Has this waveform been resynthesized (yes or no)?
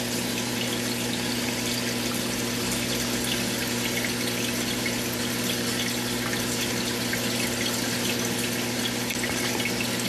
no